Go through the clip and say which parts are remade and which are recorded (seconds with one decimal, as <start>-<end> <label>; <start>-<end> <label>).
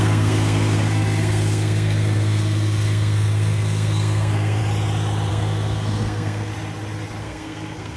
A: 0.0-4.6 remade; 4.6-5.3 recorded; 5.3-6.5 remade; 6.5-7.2 recorded; 7.2-8.0 remade